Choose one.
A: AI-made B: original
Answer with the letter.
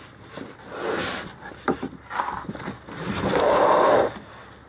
B